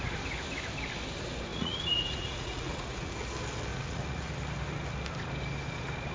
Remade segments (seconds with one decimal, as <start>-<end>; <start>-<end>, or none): 1.5-3.1; 3.7-4.3